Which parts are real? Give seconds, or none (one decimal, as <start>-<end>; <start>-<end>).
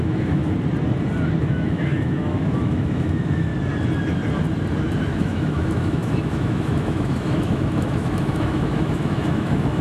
0.4-1.4; 3.5-5.1